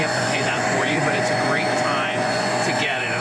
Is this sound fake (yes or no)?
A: yes